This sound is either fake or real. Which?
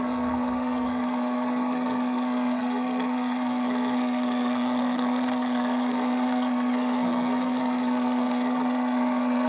fake